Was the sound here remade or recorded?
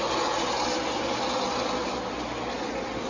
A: recorded